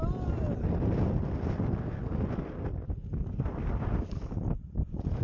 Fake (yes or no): no